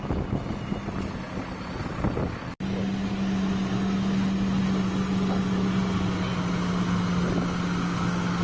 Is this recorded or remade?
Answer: recorded